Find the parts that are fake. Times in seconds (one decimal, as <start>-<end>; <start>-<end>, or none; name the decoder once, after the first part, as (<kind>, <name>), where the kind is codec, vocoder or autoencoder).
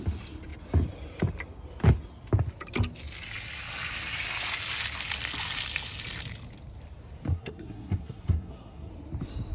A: 7.3-8.9 (codec, SNAC)